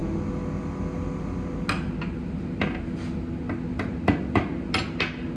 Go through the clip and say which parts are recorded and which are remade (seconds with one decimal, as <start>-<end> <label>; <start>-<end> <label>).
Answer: 0.0-5.4 recorded